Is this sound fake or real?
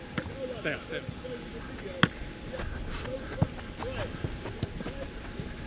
real